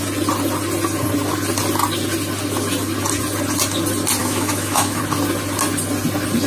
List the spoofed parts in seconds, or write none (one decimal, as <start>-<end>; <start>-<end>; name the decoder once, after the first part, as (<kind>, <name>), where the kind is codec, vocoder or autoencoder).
4.2-5.0 (autoencoder, DAC-VAE)